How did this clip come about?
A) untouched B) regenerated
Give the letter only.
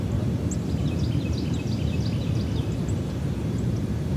A